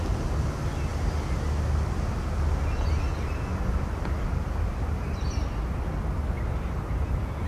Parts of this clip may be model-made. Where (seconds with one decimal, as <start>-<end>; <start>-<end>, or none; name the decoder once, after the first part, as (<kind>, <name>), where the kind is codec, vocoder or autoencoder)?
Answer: none